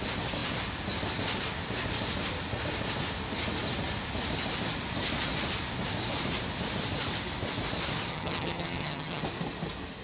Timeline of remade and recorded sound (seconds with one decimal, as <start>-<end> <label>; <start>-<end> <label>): 0.0-8.1 recorded; 8.1-9.2 remade; 9.2-10.0 recorded